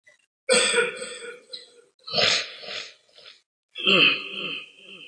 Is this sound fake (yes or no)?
no